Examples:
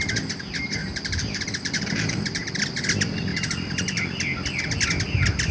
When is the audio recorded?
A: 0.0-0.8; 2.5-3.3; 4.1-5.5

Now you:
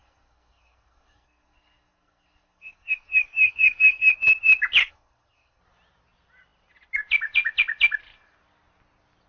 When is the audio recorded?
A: 4.1-4.8; 5.6-9.3

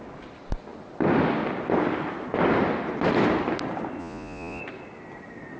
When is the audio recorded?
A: 0.0-4.0; 4.6-5.6

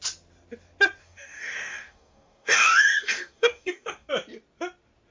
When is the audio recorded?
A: 0.0-1.0; 4.1-5.1